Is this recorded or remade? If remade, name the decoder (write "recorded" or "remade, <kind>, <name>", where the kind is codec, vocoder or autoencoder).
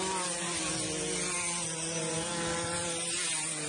recorded